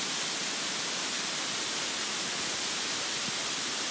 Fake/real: real